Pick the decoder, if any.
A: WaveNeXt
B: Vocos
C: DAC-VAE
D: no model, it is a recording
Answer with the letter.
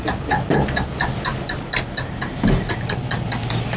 D